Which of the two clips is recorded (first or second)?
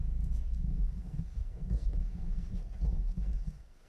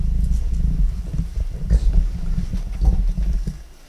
second